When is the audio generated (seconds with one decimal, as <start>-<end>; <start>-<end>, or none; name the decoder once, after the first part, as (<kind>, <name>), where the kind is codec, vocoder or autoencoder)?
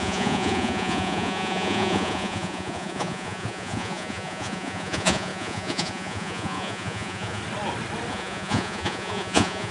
0.0-7.4 (vocoder, Vocos); 8.1-9.7